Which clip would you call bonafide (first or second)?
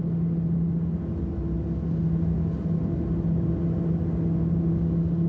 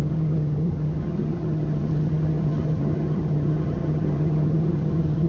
first